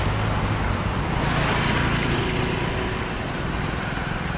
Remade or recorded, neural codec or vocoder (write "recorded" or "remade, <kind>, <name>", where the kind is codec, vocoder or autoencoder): recorded